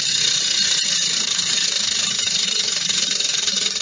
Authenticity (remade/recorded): remade